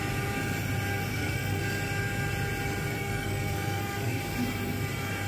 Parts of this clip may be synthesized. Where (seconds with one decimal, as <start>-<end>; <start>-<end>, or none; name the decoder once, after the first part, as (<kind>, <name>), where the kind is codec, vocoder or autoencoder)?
1.1-1.6 (codec, SNAC); 2.9-4.2